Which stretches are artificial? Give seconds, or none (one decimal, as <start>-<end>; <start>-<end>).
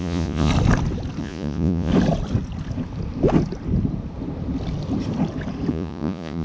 0.0-0.5; 1.2-1.9; 5.7-6.4